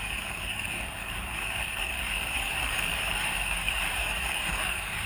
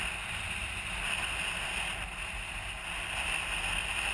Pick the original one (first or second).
second